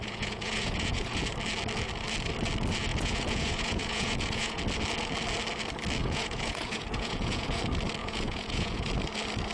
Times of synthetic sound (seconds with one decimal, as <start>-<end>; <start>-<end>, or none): 0.0-1.2; 2.9-4.6; 6.0-7.6; 8.0-8.9